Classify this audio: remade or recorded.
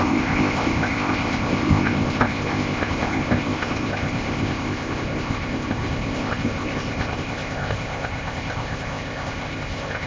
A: remade